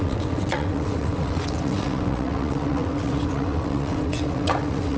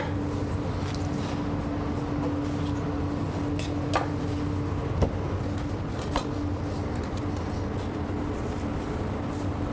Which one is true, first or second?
second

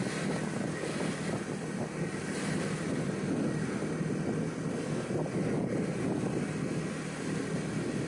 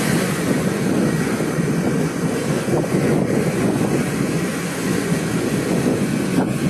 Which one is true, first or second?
first